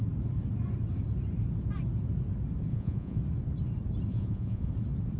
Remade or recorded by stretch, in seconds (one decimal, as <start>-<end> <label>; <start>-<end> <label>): 0.0-2.7 recorded; 2.7-3.2 remade; 3.2-4.1 recorded; 4.1-4.7 remade; 4.7-5.2 recorded